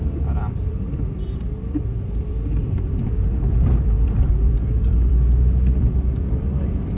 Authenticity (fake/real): fake